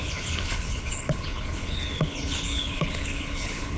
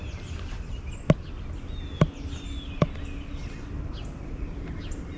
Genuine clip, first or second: second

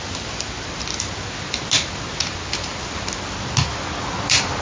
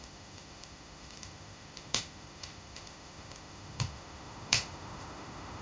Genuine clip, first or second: first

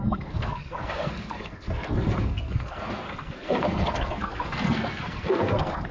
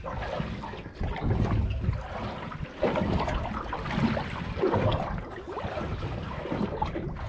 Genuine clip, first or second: second